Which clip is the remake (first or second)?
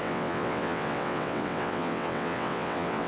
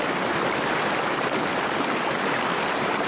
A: first